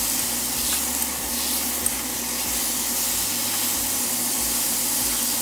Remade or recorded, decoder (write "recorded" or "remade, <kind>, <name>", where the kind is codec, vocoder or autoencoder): recorded